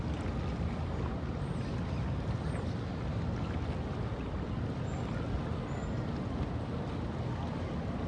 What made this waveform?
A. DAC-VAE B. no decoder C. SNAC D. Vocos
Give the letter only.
B